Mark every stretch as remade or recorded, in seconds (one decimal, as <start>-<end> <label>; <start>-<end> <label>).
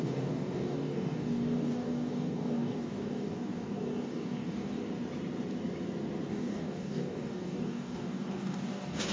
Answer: 0.0-4.8 remade; 4.8-6.3 recorded; 6.3-9.1 remade